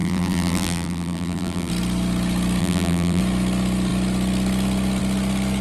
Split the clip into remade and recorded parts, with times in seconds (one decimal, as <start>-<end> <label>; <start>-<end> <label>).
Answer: 0.0-1.7 remade; 1.7-2.6 recorded; 2.6-3.2 remade; 3.2-5.6 recorded